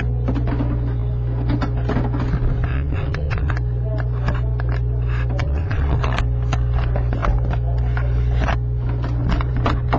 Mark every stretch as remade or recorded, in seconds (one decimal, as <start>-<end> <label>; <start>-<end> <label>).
0.0-2.7 recorded; 2.7-3.5 remade; 3.5-5.4 recorded; 5.4-6.0 remade; 6.0-10.0 recorded